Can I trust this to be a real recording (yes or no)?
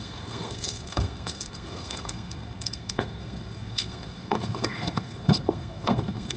no